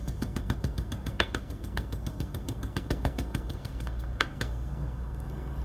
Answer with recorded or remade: remade